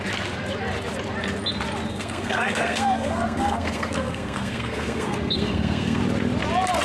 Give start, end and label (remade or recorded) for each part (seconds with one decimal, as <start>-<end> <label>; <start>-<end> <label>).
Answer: 0.0-1.9 recorded; 1.9-6.0 remade; 6.0-6.8 recorded